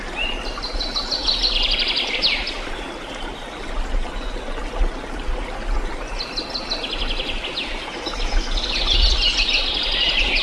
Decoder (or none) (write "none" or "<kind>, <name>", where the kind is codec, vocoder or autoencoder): none